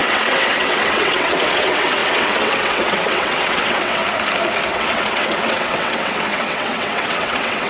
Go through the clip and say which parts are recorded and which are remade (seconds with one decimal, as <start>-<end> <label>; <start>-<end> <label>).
0.0-4.0 remade; 4.0-4.7 recorded; 4.7-7.7 remade